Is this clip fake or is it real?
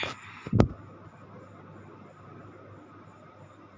real